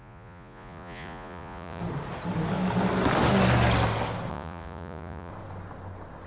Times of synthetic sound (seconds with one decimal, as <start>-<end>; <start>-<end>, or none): 0.0-1.8; 4.3-5.3